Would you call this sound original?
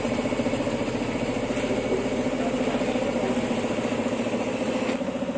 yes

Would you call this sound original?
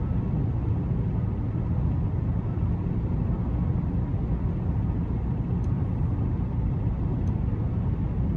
yes